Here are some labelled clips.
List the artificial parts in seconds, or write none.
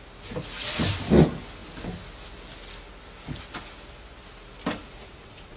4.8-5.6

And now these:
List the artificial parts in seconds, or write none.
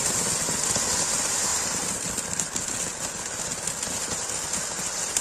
1.5-2.7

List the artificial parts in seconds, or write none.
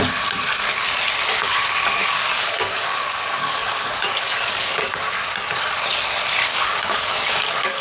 2.0-5.0; 6.5-7.8